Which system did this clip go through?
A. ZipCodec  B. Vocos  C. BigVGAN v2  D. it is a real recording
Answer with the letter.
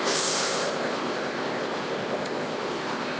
A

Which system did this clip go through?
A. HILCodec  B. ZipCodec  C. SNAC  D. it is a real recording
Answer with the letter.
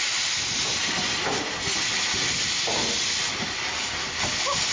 D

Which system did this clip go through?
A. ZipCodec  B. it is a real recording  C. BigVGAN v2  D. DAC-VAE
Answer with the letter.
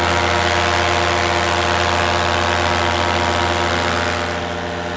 B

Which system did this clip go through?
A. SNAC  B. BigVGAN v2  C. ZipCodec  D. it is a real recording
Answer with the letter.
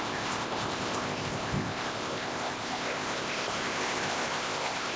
C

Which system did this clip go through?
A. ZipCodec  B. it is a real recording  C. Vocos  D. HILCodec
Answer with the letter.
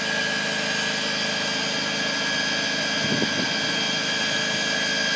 B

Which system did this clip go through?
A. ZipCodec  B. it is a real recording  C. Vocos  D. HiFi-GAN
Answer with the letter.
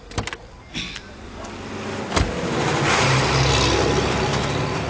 B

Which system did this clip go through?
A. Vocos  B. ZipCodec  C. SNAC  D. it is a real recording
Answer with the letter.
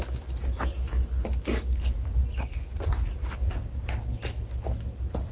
D